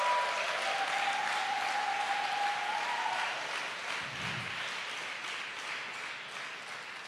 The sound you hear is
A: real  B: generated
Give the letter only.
A